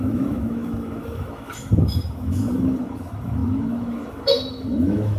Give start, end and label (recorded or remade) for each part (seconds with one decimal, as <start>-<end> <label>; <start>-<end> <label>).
0.0-5.2 remade